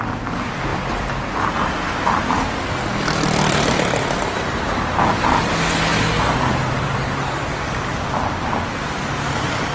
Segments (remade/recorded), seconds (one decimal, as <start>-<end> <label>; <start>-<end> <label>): 0.0-9.7 recorded